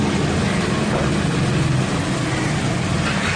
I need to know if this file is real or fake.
real